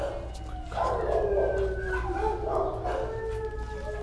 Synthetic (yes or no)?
no